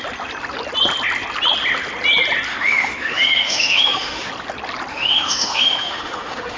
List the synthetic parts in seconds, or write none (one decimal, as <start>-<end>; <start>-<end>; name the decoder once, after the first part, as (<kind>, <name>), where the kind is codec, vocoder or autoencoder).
2.5-4.3 (autoencoder, DAC-VAE); 4.9-6.6